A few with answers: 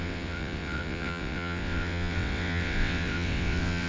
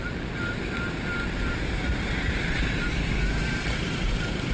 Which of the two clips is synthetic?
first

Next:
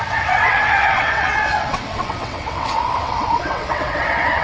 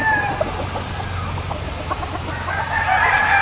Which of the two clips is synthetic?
first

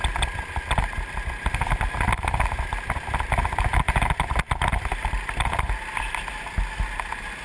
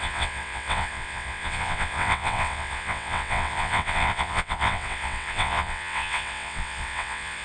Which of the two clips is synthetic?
second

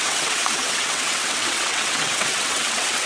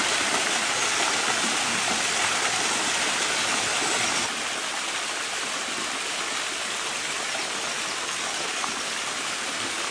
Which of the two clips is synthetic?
first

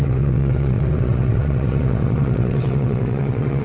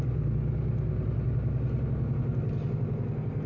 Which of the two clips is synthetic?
first